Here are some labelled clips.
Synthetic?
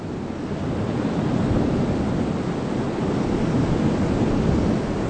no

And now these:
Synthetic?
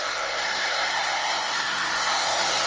yes